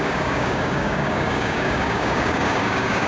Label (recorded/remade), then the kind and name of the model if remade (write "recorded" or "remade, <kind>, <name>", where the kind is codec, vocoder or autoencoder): remade, codec, DAC